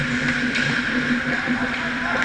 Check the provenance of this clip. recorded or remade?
remade